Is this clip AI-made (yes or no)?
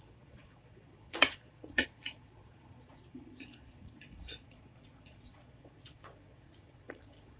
yes